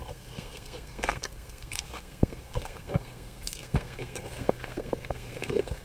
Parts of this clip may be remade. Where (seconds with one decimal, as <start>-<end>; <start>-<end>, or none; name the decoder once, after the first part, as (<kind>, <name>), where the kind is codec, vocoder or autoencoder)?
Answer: 0.0-5.8 (codec, SNAC)